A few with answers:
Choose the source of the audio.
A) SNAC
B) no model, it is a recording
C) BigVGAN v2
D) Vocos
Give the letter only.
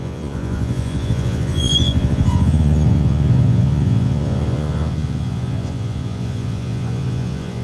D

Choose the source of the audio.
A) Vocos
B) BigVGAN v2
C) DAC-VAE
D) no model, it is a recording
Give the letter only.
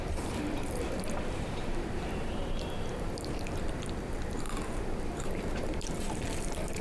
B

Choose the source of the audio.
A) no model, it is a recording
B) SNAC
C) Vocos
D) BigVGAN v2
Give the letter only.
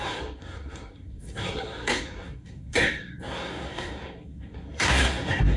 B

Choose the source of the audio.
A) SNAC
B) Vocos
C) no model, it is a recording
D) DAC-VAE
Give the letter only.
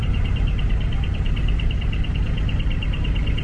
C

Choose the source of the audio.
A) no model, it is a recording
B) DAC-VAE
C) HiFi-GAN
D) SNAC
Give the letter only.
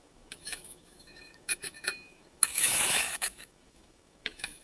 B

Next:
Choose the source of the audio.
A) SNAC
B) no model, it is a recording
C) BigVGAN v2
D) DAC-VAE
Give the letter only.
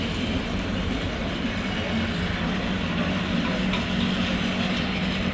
B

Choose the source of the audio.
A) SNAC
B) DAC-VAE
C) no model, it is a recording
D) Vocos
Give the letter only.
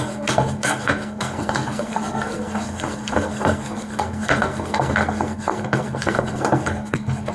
A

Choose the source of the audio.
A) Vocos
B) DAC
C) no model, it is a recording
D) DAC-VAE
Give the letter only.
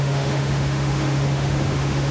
D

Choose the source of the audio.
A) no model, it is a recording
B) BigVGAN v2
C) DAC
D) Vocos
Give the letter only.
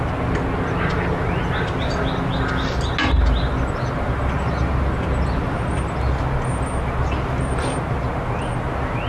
A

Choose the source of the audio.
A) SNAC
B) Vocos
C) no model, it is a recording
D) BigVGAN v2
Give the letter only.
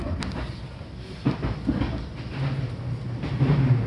C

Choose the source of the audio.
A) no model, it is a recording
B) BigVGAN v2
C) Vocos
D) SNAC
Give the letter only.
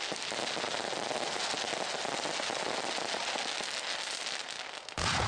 A